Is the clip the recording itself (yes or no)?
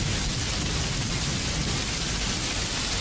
yes